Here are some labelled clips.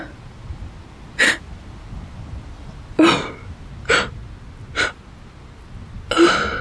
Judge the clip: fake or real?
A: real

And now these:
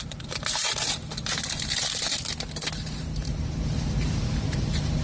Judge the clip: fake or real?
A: fake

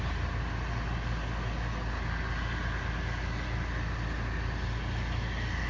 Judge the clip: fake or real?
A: real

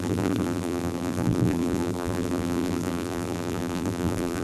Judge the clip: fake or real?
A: fake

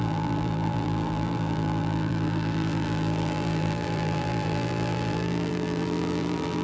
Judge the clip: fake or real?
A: fake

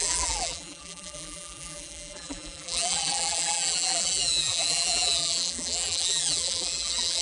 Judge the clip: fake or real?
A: fake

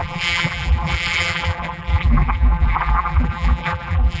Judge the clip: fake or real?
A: fake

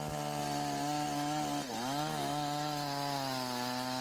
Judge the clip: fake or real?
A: real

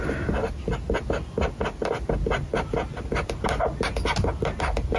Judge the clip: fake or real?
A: real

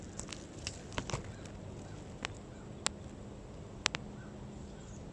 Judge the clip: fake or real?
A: real